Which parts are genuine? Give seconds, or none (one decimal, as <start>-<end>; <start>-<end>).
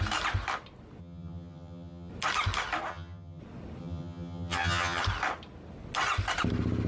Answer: 0.0-1.0; 2.1-2.9; 3.4-3.8; 5.0-6.9